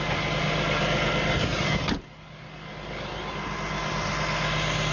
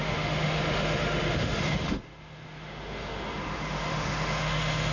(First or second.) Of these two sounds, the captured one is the first